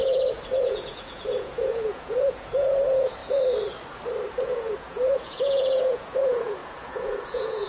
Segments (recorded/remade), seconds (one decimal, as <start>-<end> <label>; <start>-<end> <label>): 0.0-3.2 remade; 3.2-4.3 recorded; 4.3-7.7 remade